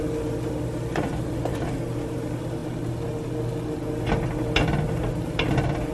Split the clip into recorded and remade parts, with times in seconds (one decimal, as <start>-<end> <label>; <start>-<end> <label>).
0.0-5.9 recorded